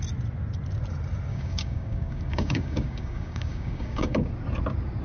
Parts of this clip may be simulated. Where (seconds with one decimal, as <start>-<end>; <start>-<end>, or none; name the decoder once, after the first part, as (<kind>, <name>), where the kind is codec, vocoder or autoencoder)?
1.3-4.3 (codec, DAC)